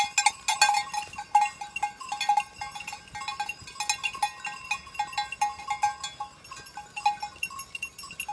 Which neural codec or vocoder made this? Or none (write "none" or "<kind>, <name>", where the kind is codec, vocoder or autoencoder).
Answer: none